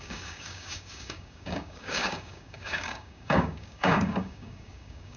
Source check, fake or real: fake